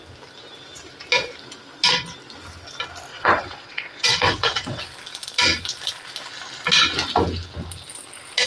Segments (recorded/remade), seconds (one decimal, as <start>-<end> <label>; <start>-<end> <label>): 0.0-3.1 recorded; 3.1-4.8 remade; 4.8-8.5 recorded